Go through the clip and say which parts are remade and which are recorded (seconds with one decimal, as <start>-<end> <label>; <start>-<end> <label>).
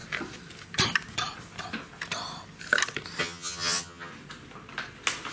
0.0-3.2 recorded; 3.2-4.1 remade; 4.1-5.3 recorded